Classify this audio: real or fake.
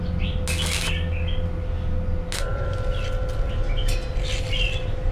real